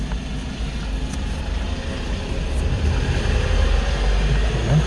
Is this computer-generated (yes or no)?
no